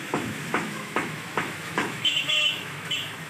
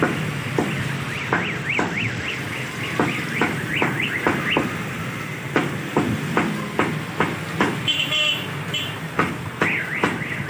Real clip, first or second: second